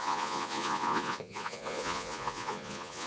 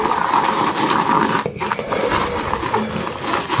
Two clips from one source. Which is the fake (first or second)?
first